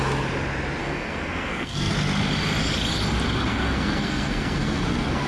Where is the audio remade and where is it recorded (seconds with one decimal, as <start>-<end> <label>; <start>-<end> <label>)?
0.0-0.8 recorded; 0.8-1.9 remade; 1.9-3.5 recorded; 3.5-5.3 remade